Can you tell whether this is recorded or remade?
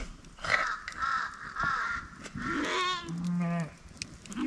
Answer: recorded